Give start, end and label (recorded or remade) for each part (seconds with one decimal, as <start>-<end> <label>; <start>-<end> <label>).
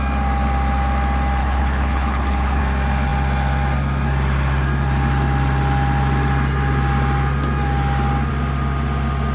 0.0-1.4 recorded; 1.4-2.6 remade; 2.6-9.3 recorded